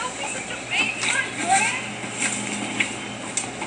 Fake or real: real